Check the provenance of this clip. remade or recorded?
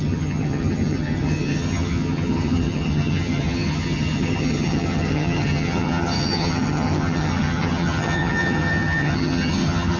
remade